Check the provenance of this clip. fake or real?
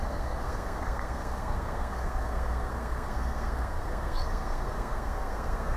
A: fake